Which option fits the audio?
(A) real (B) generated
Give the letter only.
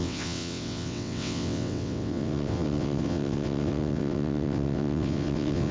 B